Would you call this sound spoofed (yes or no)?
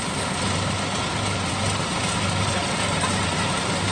yes